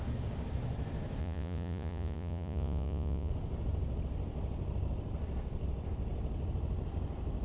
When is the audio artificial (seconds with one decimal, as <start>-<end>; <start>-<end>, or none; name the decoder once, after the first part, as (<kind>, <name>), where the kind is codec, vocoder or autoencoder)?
1.2-3.3 (vocoder, Vocos)